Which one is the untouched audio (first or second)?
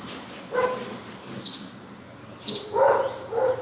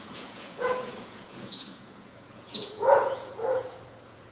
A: first